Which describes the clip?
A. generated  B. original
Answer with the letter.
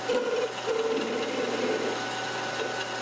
B